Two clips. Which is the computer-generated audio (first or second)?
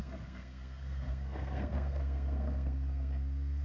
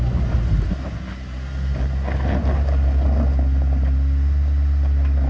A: first